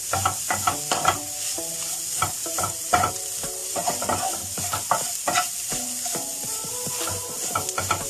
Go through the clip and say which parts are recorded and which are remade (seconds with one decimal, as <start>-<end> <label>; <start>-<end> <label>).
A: 0.0-2.4 recorded; 2.4-3.1 remade; 3.1-8.1 recorded